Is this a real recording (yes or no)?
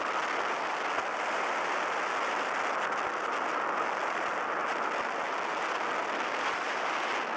yes